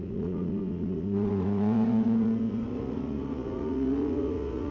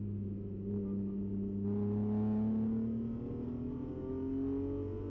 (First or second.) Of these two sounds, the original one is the second